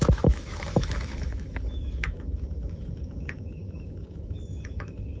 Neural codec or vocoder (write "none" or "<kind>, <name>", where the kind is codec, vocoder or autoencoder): autoencoder, DAC-VAE